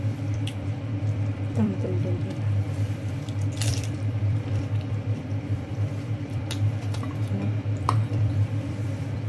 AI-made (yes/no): yes